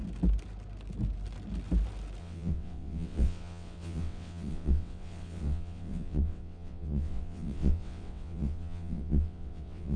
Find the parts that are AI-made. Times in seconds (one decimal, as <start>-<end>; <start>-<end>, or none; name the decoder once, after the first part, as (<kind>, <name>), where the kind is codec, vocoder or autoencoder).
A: 2.2-10.0 (vocoder, WaveNeXt)